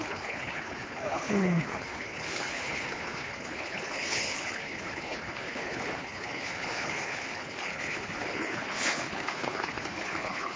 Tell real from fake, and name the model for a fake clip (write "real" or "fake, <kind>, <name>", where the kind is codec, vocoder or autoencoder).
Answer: fake, codec, HILCodec